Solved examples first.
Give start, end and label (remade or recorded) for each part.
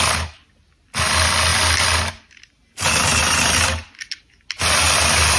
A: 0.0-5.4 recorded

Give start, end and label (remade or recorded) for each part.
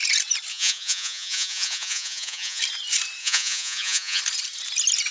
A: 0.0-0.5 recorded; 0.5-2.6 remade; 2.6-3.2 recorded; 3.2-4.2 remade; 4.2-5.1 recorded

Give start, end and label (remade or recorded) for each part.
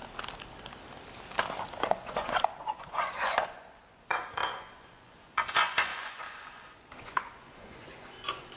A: 0.0-1.8 recorded; 1.8-8.6 remade